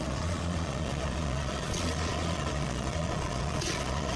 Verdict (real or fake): fake